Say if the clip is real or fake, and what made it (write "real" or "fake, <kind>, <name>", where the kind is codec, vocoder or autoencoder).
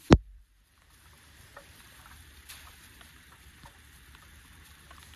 fake, vocoder, BigVGAN v2